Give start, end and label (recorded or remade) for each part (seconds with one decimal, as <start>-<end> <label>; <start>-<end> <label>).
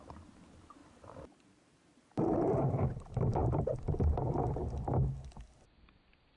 0.0-0.8 recorded; 0.8-2.7 remade; 2.7-3.4 recorded; 3.4-4.3 remade; 4.3-6.4 recorded